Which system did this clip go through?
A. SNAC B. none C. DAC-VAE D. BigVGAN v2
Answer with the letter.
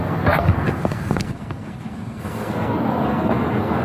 A